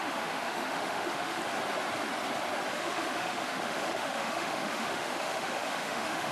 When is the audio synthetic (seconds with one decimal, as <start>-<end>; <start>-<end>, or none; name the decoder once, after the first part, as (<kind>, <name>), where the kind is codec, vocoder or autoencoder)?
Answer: 0.0-1.4 (autoencoder, DAC-VAE); 2.7-6.3